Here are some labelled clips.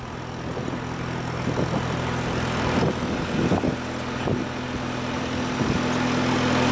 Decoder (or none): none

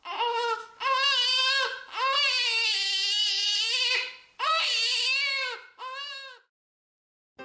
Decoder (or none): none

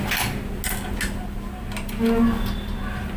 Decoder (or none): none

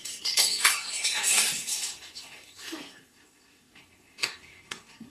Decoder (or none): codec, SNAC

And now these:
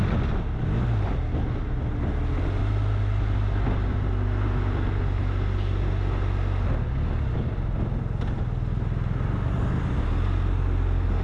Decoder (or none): none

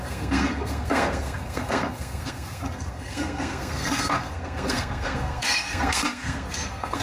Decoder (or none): codec, SNAC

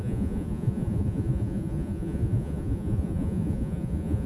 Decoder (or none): vocoder, Vocos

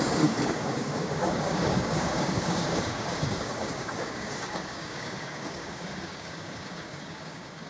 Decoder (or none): codec, DAC